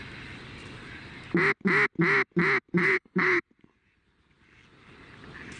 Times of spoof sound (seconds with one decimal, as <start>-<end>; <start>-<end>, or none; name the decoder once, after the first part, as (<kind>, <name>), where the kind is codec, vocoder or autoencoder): 2.8-3.4 (codec, HILCodec)

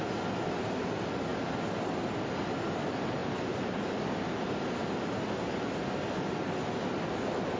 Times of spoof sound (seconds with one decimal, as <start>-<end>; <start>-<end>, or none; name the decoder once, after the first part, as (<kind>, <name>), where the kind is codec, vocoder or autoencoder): none

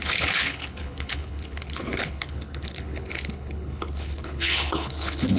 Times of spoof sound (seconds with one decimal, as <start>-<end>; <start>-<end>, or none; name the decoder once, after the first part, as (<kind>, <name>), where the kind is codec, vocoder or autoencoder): 0.0-5.4 (codec, HILCodec)

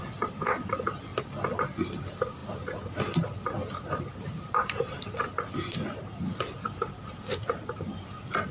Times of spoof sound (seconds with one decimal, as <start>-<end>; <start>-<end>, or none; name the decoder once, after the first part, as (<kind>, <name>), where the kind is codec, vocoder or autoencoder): none

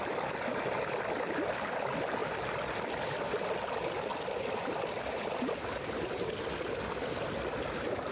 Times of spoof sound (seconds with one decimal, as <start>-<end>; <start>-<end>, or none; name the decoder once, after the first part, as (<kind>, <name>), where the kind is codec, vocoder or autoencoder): none

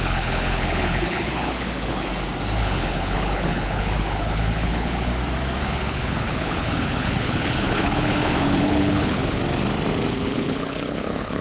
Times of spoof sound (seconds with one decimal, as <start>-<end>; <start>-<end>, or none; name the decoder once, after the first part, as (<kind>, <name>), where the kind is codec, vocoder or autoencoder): 0.0-2.1 (codec, HILCodec); 2.6-5.1; 5.6-9.4; 10.1-11.4

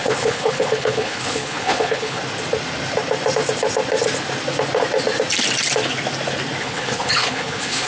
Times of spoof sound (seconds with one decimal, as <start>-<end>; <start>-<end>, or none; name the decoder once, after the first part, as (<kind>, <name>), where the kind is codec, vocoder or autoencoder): 0.0-2.2 (codec, HILCodec); 6.6-7.9

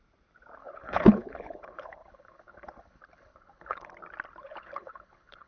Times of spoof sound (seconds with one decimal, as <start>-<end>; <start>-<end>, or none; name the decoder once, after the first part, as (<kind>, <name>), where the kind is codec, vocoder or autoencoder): 0.6-3.9 (codec, HILCodec); 4.4-5.5